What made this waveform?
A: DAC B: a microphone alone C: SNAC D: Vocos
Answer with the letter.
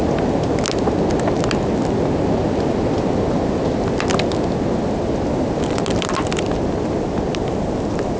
B